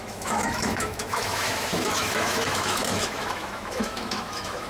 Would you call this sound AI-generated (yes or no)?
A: yes